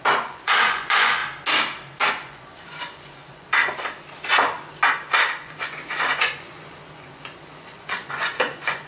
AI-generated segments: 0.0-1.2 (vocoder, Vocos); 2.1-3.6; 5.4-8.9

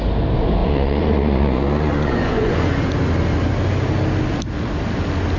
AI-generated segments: 0.6-2.8 (vocoder, Vocos)

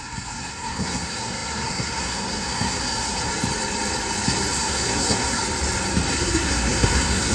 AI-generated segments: 0.0-3.3 (codec, SNAC); 4.5-5.4; 6.1-7.3

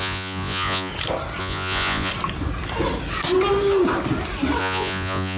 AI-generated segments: 0.0-0.9 (vocoder, Vocos); 1.4-2.1; 4.6-5.4

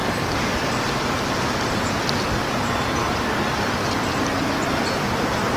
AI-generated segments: none

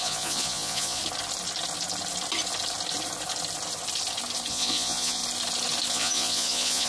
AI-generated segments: 0.0-1.0 (vocoder, Vocos); 4.5-5.2; 5.9-6.9

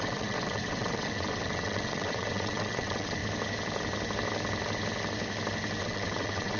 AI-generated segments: 0.0-3.2 (vocoder, WaveNeXt); 5.8-6.6